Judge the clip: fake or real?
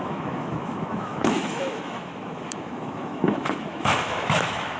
fake